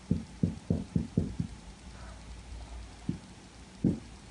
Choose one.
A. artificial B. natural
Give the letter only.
A